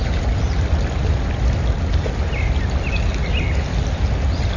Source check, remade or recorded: recorded